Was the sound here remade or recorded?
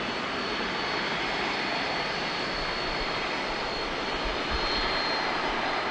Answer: recorded